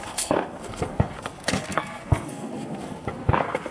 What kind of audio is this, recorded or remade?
remade